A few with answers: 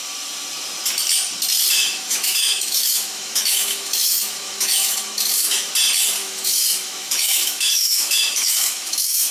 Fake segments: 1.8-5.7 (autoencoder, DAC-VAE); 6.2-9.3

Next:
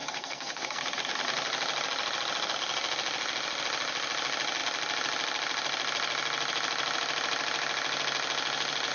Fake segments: 0.0-0.8 (codec, SNAC)

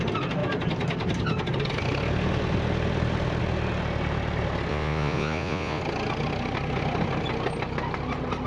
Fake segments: 4.7-5.8 (vocoder, Vocos)